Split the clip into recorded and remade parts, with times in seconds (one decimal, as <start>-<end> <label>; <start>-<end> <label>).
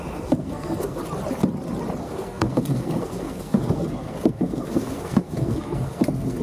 0.0-1.0 remade; 1.0-2.0 recorded; 2.0-6.4 remade